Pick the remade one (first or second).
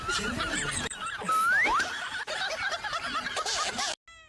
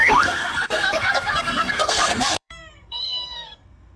second